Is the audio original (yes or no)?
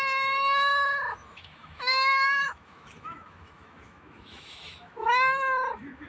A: no